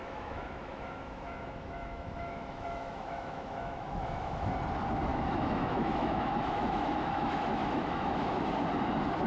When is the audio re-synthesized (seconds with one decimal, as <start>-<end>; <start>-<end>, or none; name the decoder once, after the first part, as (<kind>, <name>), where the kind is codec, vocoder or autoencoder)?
0.0-4.5 (autoencoder, DAC-VAE); 5.1-8.5